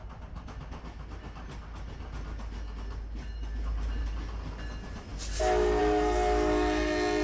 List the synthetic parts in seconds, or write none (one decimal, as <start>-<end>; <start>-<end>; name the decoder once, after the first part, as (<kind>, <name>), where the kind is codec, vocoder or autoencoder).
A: none